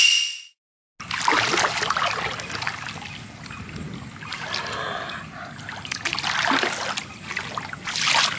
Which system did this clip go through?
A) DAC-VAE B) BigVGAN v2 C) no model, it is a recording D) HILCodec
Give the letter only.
C